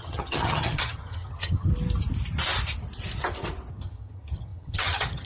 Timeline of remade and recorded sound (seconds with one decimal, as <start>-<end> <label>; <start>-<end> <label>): 0.0-1.7 remade; 1.7-3.7 recorded; 3.7-5.3 remade